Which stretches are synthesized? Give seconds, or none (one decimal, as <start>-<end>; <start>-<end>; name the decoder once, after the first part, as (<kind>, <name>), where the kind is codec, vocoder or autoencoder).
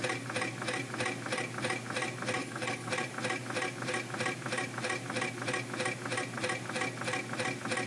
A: 2.4-2.9 (codec, HILCodec)